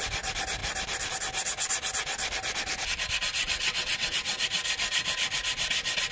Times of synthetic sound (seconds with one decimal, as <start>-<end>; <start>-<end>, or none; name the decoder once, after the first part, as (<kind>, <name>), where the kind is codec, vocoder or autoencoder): 3.4-4.4 (vocoder, WaveNeXt)